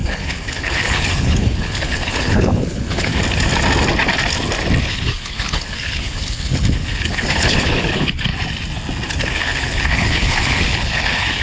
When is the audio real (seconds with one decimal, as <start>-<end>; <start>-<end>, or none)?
3.1-4.8; 8.3-9.1